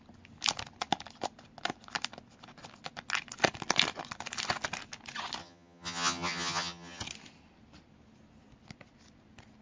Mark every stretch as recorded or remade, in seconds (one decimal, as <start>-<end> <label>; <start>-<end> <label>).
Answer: 0.0-5.4 recorded; 5.4-7.0 remade; 7.0-9.6 recorded